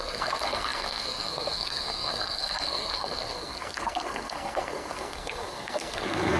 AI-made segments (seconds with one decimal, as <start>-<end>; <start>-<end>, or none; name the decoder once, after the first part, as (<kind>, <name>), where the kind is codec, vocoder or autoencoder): 0.0-6.4 (codec, SNAC)